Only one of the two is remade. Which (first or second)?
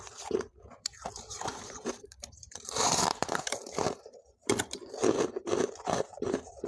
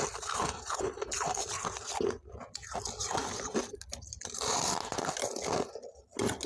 first